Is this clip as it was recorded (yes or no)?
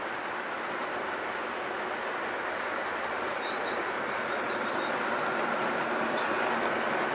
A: yes